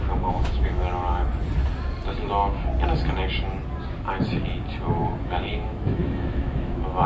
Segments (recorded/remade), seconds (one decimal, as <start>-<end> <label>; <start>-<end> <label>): 0.0-1.3 remade; 1.3-5.2 recorded; 5.2-7.1 remade